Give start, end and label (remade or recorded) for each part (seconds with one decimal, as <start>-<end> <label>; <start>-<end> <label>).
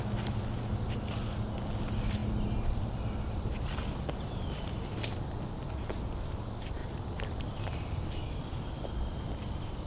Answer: 0.0-6.8 recorded; 6.8-8.1 remade; 8.1-9.9 recorded